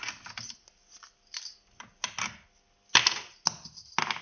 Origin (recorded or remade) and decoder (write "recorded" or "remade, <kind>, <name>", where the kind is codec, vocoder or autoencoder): recorded